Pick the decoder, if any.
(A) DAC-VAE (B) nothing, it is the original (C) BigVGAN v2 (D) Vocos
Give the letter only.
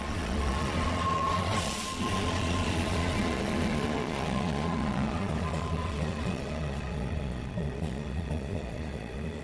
D